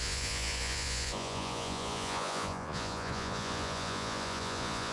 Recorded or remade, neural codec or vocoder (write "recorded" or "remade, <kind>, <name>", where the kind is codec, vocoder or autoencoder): remade, vocoder, Vocos